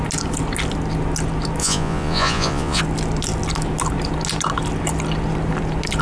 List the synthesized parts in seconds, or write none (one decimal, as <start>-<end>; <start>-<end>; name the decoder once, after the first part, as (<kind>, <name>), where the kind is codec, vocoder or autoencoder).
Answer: 1.6-2.8 (vocoder, Vocos)